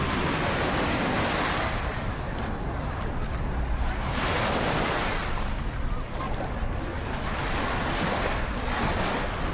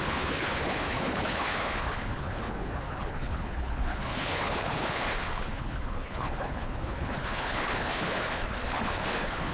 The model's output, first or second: second